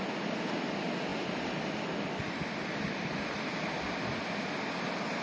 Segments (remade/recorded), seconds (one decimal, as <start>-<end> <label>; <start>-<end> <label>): 0.0-5.2 recorded